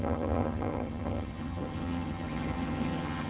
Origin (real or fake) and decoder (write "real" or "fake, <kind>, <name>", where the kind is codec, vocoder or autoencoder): fake, vocoder, HiFi-GAN